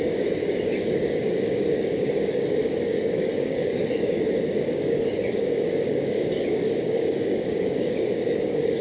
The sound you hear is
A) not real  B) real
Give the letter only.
A